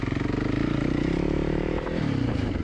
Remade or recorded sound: remade